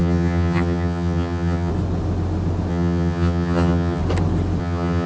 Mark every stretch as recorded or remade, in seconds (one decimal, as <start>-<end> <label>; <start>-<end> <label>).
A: 0.0-1.7 remade; 1.7-2.7 recorded; 2.7-4.0 remade; 4.0-4.6 recorded; 4.6-5.1 remade